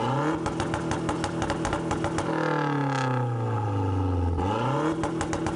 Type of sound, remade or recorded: recorded